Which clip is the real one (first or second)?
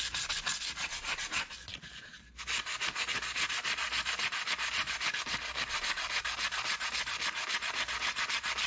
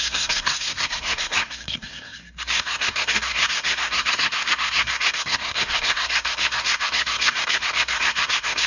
first